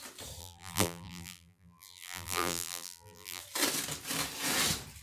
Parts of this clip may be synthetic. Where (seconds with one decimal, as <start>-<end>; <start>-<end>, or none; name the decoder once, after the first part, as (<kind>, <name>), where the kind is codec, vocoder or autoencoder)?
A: 0.4-3.4 (vocoder, BigVGAN v2)

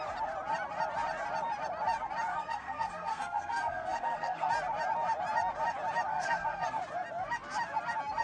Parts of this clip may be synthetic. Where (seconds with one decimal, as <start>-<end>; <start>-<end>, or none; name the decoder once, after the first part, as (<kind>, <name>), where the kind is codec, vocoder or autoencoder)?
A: 2.3-4.5 (codec, SNAC); 6.1-6.8

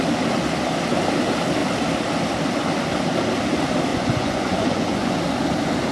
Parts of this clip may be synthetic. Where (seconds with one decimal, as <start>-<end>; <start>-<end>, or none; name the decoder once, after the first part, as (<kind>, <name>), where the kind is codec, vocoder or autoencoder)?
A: 3.9-5.2 (vocoder, Vocos)

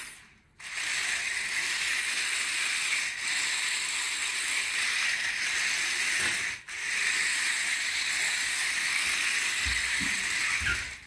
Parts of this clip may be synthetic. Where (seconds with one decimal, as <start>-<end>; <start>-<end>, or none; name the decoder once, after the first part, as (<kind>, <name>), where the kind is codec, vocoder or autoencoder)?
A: none

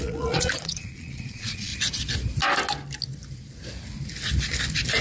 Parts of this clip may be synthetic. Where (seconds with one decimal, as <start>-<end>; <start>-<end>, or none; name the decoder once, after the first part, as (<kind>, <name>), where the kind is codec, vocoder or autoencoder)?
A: 0.0-1.7 (vocoder, Vocos)

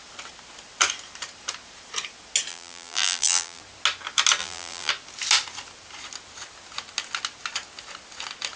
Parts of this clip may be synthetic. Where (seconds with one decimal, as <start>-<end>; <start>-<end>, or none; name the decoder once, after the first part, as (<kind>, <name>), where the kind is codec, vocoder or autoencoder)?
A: 2.5-3.6 (vocoder, BigVGAN v2); 4.4-4.9

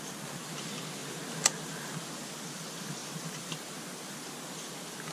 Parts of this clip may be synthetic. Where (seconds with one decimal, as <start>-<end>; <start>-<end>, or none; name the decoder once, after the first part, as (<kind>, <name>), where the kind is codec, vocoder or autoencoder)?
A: none